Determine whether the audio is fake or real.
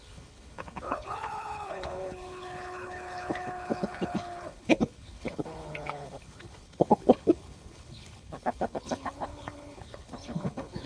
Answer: fake